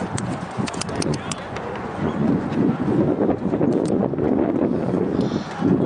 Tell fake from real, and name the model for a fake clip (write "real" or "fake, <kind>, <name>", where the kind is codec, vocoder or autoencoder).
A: fake, vocoder, Vocos